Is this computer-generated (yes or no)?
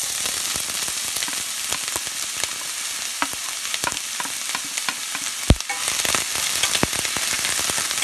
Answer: no